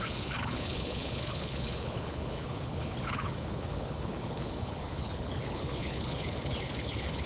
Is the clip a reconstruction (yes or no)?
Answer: yes